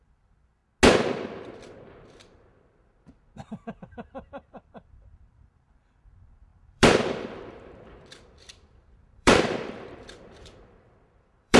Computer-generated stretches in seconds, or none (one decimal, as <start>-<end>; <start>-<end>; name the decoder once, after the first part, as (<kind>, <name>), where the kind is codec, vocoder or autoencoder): 0.0-0.6 (vocoder, BigVGAN v2); 3.5-11.6